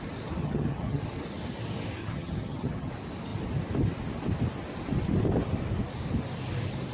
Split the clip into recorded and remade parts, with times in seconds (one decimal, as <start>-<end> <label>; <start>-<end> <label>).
0.0-0.4 recorded; 0.4-1.0 remade; 1.0-2.0 recorded; 2.0-2.9 remade; 2.9-6.9 recorded